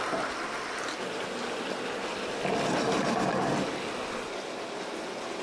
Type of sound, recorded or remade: recorded